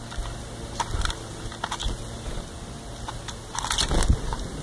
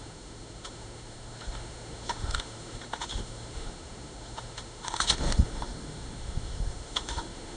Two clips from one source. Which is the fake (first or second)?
second